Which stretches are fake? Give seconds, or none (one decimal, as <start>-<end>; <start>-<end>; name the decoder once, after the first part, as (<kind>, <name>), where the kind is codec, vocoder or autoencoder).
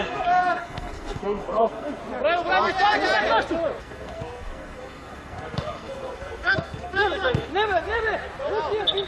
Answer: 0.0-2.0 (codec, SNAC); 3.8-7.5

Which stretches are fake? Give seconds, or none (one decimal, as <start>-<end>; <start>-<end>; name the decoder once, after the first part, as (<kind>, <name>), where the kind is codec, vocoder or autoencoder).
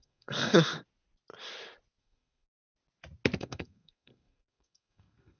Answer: 0.0-0.7 (codec, SNAC); 2.0-2.6; 3.4-5.4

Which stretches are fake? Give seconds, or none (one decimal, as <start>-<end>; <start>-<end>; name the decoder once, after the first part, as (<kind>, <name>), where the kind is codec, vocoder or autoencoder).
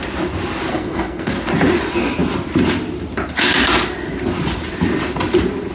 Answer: 0.7-1.3 (codec, SNAC)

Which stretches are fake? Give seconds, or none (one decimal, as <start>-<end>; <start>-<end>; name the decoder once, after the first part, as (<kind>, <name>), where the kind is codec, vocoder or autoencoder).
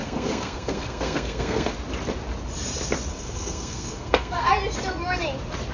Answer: 0.0-1.7 (codec, SNAC); 3.1-4.5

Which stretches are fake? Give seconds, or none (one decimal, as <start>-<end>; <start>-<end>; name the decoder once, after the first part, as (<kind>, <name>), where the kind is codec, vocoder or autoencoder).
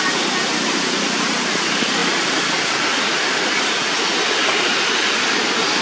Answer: none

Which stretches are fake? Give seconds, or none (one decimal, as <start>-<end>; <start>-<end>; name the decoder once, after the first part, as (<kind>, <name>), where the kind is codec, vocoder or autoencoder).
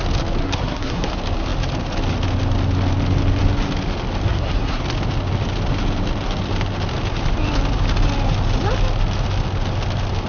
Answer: 0.4-1.1 (codec, SNAC); 4.3-4.8